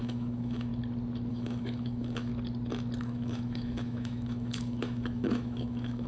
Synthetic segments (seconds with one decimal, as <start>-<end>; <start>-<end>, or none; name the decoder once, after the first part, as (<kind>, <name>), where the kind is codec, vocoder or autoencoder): 0.0-0.7 (autoencoder, DAC-VAE); 1.3-2.3; 3.0-6.1

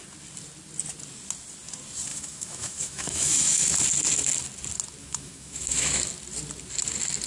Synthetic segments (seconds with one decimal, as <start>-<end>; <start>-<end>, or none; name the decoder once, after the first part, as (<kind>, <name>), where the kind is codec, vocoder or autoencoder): 2.1-3.7 (autoencoder, DAC-VAE); 5.0-6.0

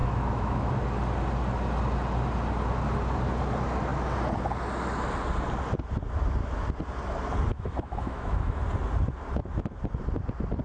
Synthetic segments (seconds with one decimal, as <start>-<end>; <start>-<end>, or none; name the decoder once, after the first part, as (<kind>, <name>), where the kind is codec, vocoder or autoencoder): 0.0-0.7 (autoencoder, DAC-VAE); 7.5-8.6